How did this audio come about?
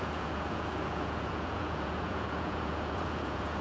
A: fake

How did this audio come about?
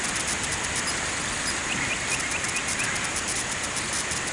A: real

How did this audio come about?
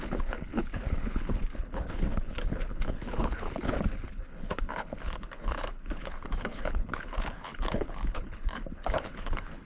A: fake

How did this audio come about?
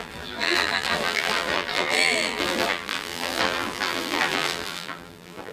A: fake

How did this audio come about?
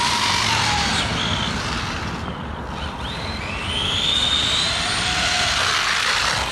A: real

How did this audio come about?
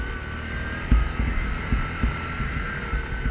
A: real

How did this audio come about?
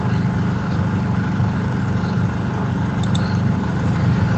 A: fake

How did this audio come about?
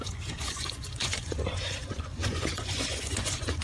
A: fake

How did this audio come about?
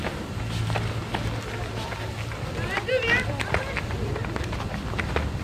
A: real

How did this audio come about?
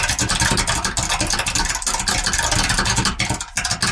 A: real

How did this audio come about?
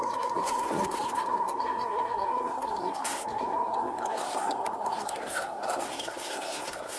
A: fake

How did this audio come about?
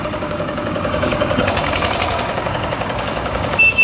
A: fake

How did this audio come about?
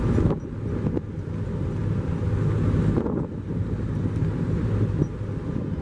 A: real